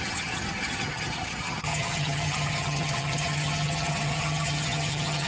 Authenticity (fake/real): fake